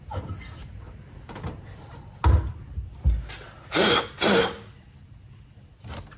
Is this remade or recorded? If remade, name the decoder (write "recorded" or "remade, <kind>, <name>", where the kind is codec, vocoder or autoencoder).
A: recorded